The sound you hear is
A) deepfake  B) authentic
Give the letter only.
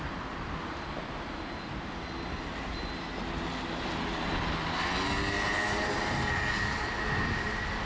B